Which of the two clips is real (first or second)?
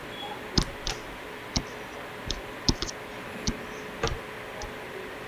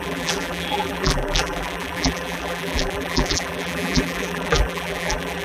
first